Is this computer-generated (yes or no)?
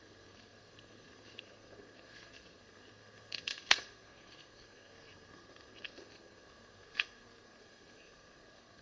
yes